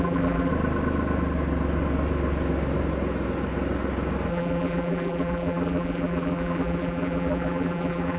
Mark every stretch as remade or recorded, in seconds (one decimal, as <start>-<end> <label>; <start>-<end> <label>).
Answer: 0.0-0.5 remade; 0.5-4.3 recorded; 4.3-8.2 remade

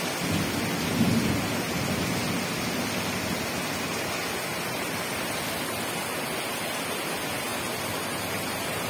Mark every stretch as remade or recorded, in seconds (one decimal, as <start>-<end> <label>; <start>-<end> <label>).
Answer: 0.0-8.9 recorded

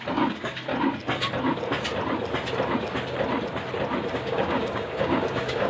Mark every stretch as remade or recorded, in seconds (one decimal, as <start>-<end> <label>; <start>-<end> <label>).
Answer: 0.0-0.7 remade; 0.7-4.1 recorded; 4.1-5.7 remade